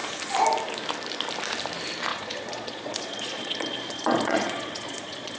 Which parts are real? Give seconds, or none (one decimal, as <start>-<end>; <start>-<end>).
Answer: 0.0-2.1